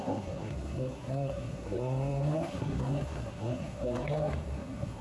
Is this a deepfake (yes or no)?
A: yes